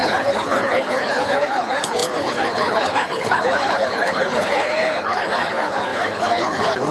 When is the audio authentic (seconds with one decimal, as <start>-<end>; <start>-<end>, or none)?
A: none